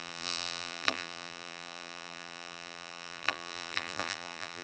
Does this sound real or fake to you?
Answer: fake